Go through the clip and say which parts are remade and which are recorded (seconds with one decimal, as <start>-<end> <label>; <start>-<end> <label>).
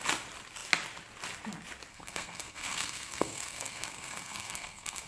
0.0-1.9 recorded; 1.9-5.1 remade